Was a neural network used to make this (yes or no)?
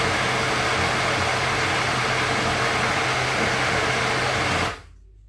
no